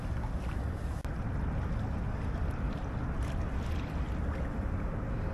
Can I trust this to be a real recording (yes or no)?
yes